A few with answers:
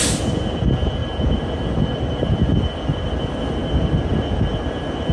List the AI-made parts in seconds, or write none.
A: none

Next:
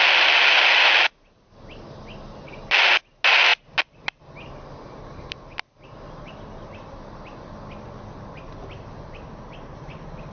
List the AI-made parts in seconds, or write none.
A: none

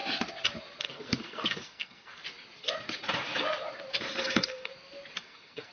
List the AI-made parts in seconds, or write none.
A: 0.8-2.2; 4.2-4.7; 5.2-5.7

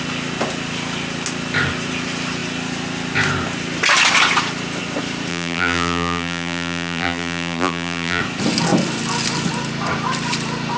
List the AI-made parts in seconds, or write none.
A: 5.3-8.2

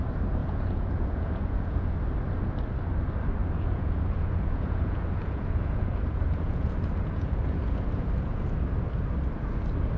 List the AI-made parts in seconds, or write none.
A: 0.4-1.9; 3.4-8.6

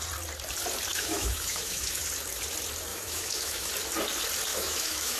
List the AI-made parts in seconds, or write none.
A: 0.9-2.0; 2.9-3.7; 4.5-5.2

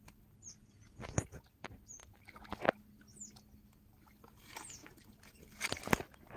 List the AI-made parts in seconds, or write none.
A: none